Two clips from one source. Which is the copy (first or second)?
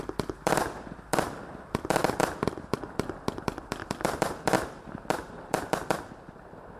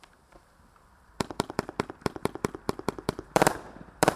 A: second